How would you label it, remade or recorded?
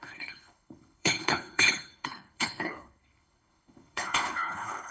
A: remade